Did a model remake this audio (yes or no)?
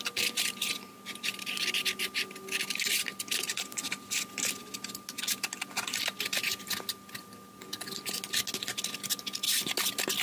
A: no